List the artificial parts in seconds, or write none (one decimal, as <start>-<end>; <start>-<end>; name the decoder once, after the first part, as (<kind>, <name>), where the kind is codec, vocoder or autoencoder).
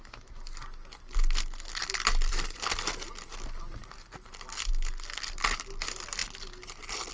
1.8-3.1 (vocoder, BigVGAN v2)